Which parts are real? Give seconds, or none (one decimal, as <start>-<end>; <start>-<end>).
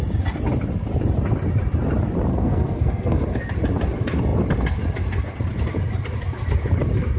0.0-2.3; 3.2-7.2